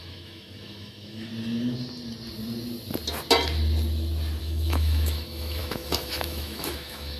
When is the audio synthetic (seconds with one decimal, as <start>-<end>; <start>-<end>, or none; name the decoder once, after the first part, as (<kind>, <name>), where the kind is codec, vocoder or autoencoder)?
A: 0.0-1.3 (autoencoder, DAC-VAE); 4.4-7.2